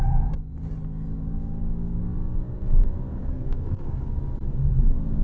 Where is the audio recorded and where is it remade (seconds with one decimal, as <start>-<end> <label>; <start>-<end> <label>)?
0.0-3.1 recorded; 3.1-4.1 remade; 4.1-5.2 recorded